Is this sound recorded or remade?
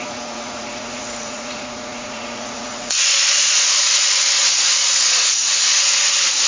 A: remade